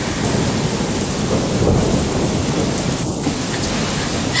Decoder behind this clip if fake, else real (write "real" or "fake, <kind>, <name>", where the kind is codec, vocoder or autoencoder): real